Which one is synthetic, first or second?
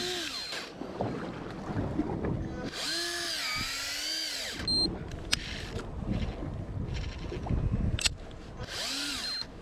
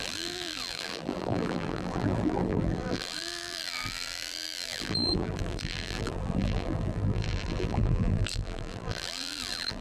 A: second